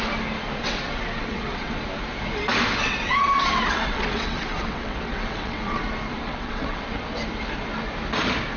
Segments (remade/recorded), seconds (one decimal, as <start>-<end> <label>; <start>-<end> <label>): 0.0-0.6 recorded; 0.6-1.8 remade; 1.8-2.8 recorded; 2.8-5.8 remade; 5.8-6.2 recorded; 6.2-6.8 remade; 6.8-8.6 recorded